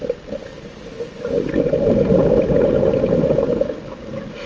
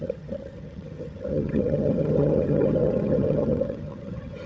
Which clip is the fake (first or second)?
second